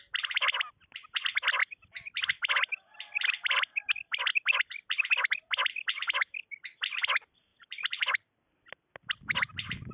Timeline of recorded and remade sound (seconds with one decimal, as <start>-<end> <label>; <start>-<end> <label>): 0.0-7.5 recorded; 7.5-8.0 remade; 8.0-9.9 recorded